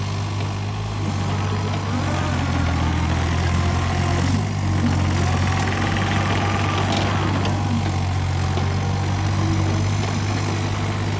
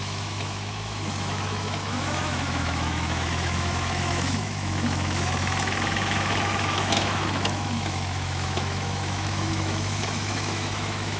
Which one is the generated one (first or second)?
second